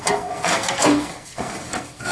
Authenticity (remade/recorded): remade